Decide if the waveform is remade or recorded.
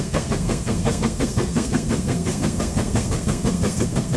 remade